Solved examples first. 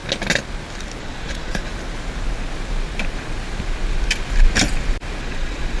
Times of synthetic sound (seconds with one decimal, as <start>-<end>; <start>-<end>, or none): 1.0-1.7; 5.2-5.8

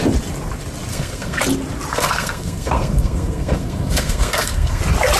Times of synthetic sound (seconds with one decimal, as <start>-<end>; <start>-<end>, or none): 0.9-1.4; 1.9-4.8

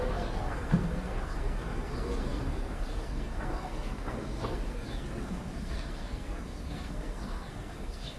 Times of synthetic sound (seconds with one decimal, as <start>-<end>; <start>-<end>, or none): 0.0-8.2

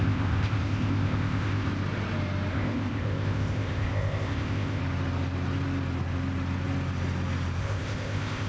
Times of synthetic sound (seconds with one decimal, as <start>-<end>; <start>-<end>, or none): 0.0-1.7; 2.5-4.8; 7.6-8.5